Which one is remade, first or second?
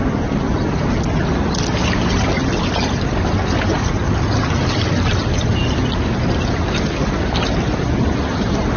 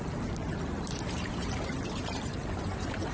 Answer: second